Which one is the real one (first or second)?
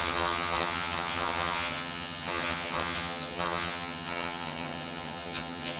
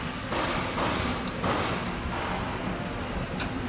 second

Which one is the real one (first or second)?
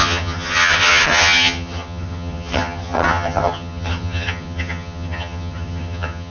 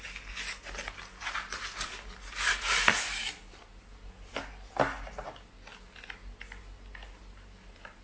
second